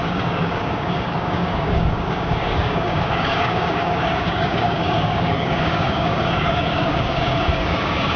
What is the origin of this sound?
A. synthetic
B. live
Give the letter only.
A